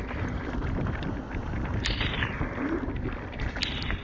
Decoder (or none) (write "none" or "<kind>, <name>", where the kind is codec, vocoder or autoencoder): none